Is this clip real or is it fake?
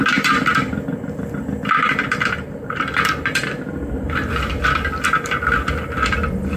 fake